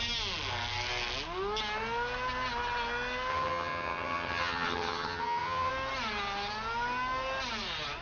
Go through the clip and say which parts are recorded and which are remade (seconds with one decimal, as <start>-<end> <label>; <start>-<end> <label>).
0.0-3.3 recorded; 3.3-5.7 remade; 5.7-8.0 recorded